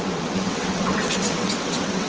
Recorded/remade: remade